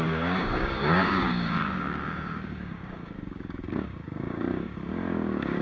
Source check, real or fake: fake